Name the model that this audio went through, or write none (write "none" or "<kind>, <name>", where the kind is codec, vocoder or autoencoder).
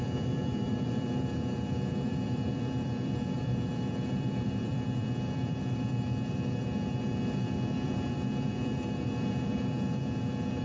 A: vocoder, BigVGAN v2